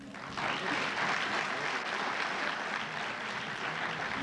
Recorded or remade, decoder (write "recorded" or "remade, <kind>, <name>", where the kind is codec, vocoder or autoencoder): recorded